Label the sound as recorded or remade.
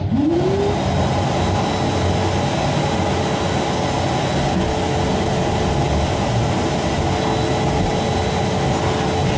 recorded